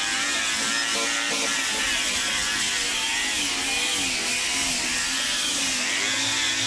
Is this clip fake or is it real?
real